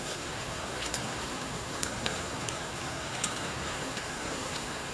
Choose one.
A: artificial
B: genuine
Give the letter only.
A